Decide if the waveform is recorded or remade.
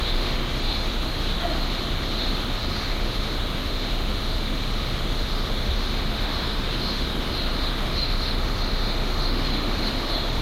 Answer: remade